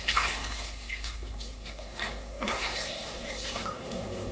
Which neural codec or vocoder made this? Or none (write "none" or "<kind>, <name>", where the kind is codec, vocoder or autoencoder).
codec, SNAC